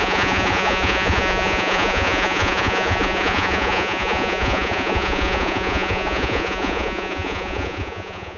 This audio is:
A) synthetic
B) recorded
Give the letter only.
A